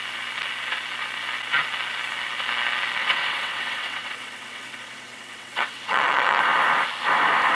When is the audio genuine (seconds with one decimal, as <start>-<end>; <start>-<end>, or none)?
0.0-3.0; 6.4-7.5